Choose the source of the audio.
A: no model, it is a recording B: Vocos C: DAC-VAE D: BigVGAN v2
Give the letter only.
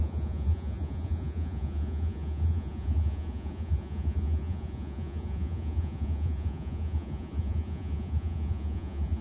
B